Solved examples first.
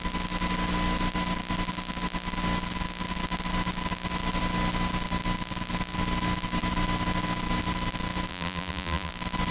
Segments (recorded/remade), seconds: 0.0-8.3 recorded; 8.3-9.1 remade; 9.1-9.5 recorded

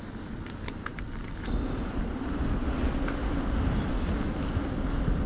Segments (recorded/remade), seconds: 0.0-0.9 recorded; 0.9-4.1 remade; 4.1-5.3 recorded